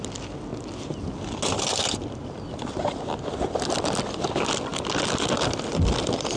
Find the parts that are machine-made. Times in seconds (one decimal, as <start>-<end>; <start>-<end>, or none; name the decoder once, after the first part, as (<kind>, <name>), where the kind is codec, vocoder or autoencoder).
none